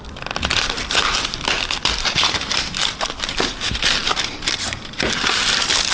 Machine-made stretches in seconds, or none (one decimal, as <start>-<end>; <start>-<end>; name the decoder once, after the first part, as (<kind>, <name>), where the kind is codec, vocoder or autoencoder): 0.0-5.9 (vocoder, BigVGAN v2)